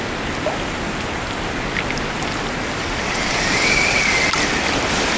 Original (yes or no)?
yes